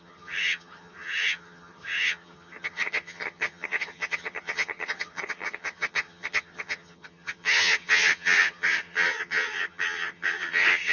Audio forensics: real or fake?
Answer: fake